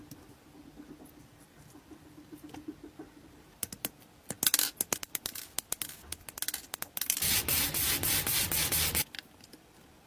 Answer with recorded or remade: recorded